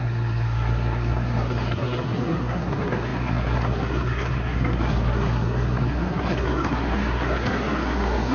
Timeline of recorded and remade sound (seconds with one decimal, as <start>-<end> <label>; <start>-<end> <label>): 0.0-8.3 remade